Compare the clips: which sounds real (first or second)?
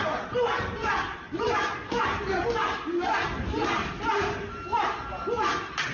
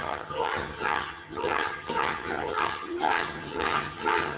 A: first